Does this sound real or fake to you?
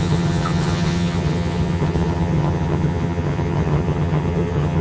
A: fake